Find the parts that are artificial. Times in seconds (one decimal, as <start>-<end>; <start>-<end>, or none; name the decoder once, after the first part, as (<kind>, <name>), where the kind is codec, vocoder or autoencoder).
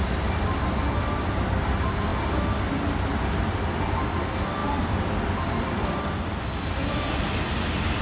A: none